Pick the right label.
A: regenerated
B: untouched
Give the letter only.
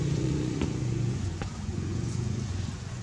A